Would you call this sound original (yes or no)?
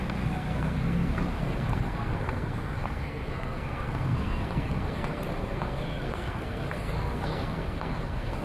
no